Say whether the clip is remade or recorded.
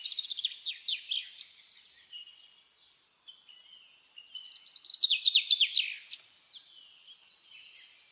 recorded